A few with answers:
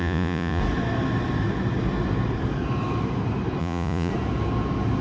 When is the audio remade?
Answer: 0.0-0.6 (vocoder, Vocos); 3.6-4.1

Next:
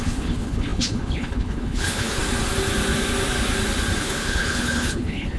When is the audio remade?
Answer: 0.0-2.2 (codec, HILCodec); 4.0-5.4

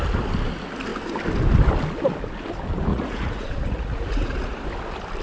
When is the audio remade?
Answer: 2.9-4.6 (vocoder, Vocos)

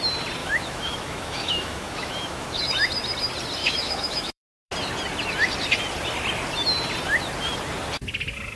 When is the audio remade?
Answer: 0.4-2.6 (autoencoder, DAC-VAE); 3.6-4.7

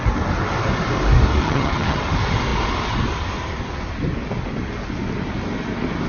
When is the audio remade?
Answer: 1.4-2.0 (vocoder, HiFi-GAN)